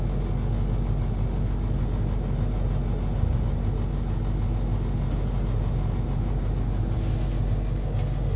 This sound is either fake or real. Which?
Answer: real